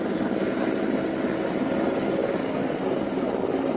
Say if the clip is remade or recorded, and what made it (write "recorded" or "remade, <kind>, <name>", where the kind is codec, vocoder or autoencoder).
recorded